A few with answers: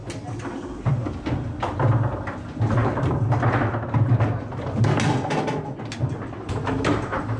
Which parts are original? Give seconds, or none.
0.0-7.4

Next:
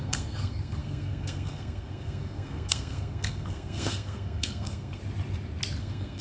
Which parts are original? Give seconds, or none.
5.0-5.8

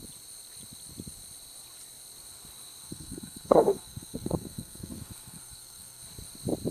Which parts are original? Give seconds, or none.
0.0-2.8; 6.0-6.7

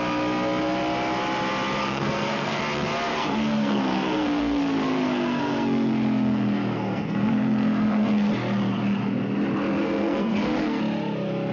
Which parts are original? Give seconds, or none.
0.0-1.8; 2.6-3.1; 8.3-9.8; 10.8-11.5

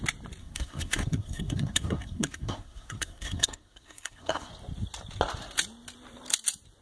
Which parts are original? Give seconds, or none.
0.0-0.4; 4.5-6.8

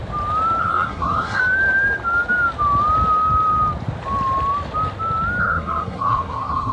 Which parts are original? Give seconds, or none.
0.0-0.6; 1.4-5.4

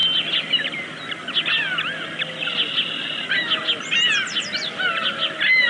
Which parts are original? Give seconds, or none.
0.0-5.7

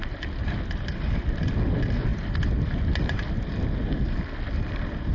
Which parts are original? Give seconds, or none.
0.0-5.1